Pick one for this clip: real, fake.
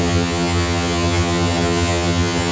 fake